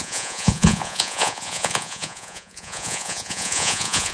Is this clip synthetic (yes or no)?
yes